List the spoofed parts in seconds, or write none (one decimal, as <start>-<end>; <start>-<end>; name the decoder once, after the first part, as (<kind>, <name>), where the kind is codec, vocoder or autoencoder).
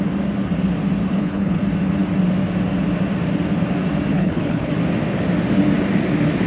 1.1-1.6 (codec, HILCodec); 4.1-4.7